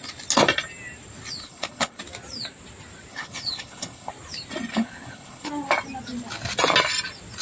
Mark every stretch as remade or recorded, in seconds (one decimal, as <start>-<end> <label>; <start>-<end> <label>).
0.0-1.4 recorded; 1.4-2.0 remade; 2.0-3.1 recorded; 3.1-4.1 remade; 4.1-4.7 recorded; 4.7-5.5 remade; 5.5-7.4 recorded